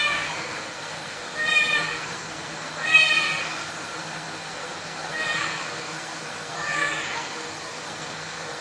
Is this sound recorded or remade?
remade